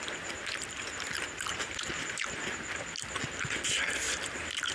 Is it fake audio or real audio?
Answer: real